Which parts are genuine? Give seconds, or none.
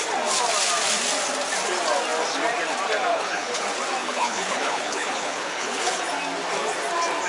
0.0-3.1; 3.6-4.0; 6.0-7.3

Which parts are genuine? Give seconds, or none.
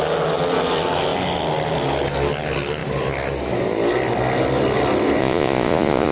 0.0-5.2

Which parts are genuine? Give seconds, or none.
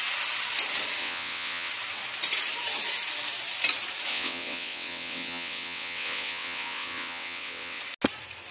0.0-1.0; 1.7-4.1; 7.8-8.5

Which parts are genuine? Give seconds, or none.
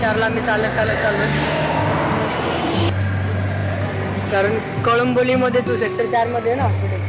0.0-0.6; 2.0-5.3; 6.1-7.1